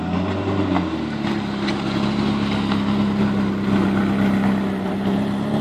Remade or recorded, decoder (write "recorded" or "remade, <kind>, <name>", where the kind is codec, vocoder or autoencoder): recorded